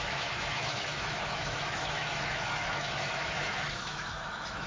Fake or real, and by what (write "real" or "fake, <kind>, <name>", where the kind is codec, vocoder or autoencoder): fake, autoencoder, DAC-VAE